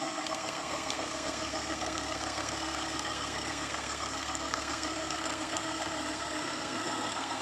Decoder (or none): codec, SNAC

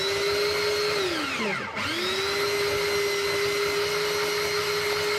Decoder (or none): none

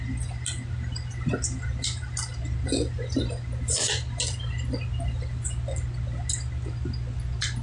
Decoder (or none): none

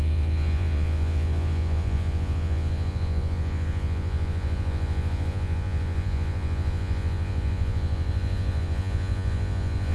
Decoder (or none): vocoder, Vocos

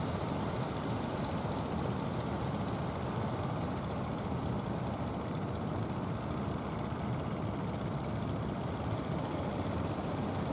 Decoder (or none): none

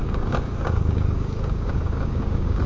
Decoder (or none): codec, DAC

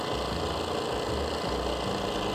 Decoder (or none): none